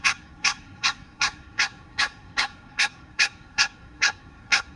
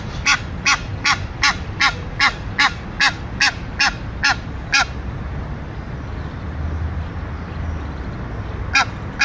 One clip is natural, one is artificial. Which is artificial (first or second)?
first